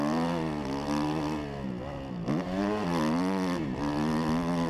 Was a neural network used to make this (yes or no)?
no